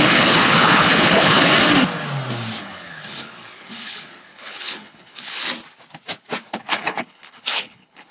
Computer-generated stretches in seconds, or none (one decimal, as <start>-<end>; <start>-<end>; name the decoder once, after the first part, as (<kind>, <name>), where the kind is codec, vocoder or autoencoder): 0.0-1.5 (codec, HILCodec); 2.6-5.4; 6.5-8.1